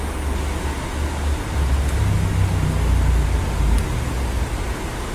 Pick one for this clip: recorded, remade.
recorded